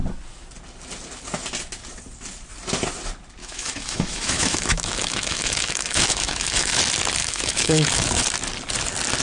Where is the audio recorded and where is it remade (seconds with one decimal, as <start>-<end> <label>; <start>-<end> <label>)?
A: 0.0-3.4 recorded; 3.4-6.8 remade; 6.8-7.2 recorded; 7.2-8.2 remade; 8.2-9.2 recorded